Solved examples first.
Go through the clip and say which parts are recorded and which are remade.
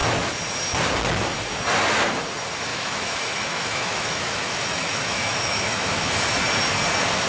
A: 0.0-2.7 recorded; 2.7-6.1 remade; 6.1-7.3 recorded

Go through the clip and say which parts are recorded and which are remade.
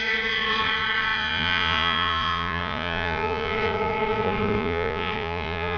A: 0.0-5.8 remade